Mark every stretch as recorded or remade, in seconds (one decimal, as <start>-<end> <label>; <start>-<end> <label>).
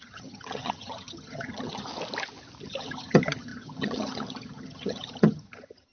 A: 0.0-1.9 remade; 1.9-2.6 recorded; 2.6-5.9 remade